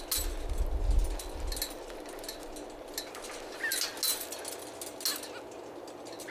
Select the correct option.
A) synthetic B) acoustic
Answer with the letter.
B